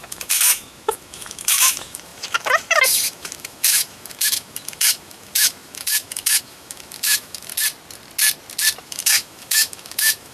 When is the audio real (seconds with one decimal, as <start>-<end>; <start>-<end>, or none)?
7.5-8.8